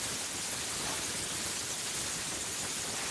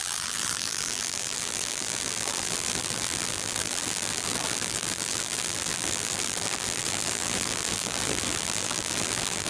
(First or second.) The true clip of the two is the first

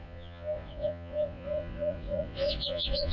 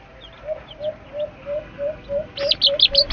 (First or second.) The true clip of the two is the second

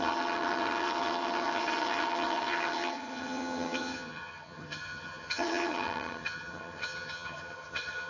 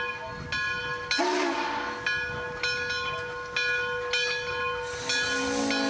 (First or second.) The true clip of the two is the second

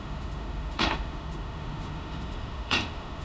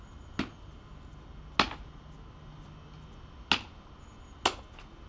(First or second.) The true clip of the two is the second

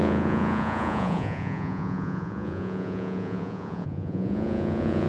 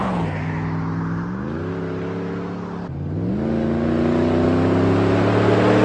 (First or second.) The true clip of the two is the second